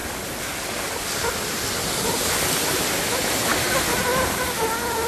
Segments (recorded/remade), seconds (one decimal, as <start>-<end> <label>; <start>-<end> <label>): 0.0-5.1 recorded